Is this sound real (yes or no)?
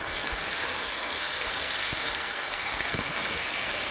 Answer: no